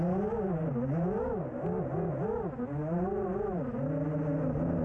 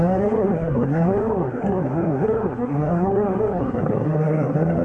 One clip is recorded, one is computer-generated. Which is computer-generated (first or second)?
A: second